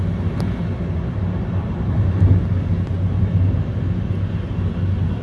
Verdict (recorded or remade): recorded